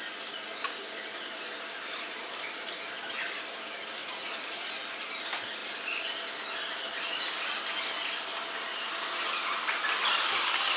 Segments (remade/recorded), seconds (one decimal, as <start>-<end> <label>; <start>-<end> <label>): 0.0-4.0 recorded; 4.0-4.7 remade; 4.7-10.8 recorded